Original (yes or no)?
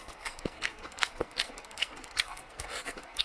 no